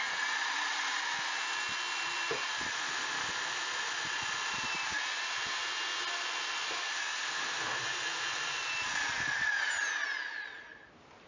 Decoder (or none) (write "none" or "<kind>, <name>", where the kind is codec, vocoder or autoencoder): none